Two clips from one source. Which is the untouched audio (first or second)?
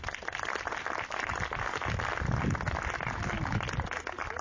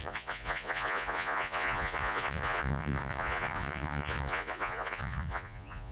first